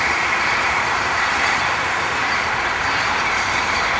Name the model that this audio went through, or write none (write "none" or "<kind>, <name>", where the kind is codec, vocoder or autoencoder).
vocoder, BigVGAN v2